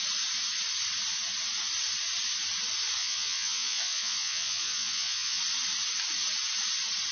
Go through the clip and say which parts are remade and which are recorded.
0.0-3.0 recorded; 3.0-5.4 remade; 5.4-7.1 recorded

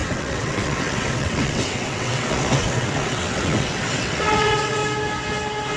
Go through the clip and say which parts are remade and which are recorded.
0.0-4.8 remade; 4.8-5.8 recorded

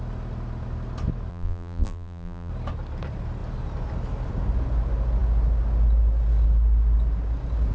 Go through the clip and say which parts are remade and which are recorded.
0.0-1.3 recorded; 1.3-2.5 remade; 2.5-7.7 recorded

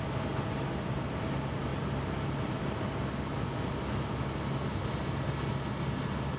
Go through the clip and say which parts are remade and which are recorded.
0.0-6.4 recorded